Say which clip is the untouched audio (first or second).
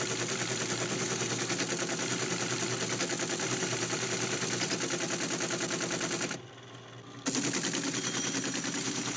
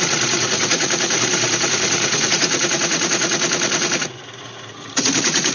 first